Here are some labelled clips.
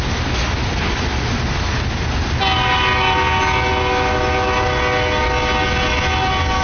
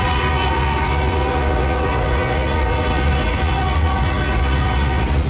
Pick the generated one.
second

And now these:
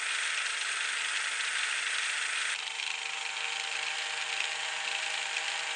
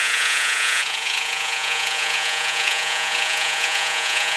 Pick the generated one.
second